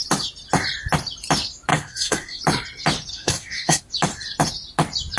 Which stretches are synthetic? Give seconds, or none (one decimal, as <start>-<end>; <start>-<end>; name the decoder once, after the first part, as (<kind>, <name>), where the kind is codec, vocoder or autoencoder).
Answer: 1.7-2.4 (codec, SNAC); 3.1-3.8